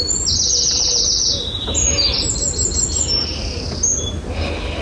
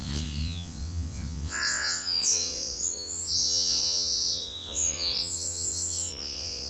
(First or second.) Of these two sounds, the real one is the first